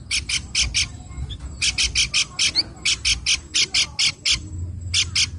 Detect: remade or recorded recorded